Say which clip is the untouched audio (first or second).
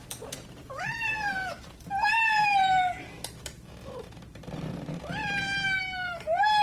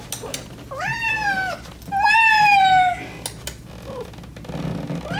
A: second